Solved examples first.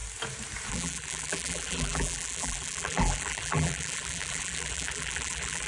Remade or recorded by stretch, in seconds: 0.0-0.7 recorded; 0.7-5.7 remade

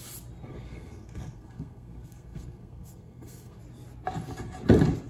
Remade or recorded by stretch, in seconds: 0.0-0.5 recorded; 0.5-3.6 remade; 3.6-5.1 recorded